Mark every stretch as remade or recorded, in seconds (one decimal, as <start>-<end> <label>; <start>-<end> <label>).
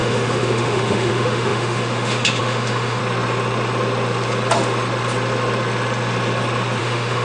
0.0-3.0 remade; 3.0-6.8 recorded; 6.8-7.2 remade